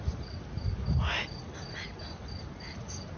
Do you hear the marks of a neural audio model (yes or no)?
no